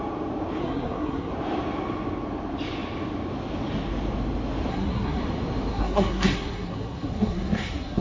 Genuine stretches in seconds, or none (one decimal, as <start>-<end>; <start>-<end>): 0.0-0.6; 1.3-4.7; 5.2-5.7